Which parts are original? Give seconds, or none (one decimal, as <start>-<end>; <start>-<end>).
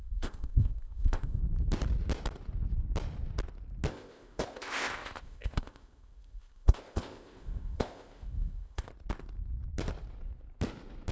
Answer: 1.4-3.9; 8.9-11.1